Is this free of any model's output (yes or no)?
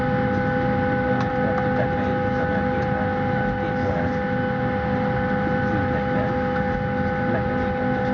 yes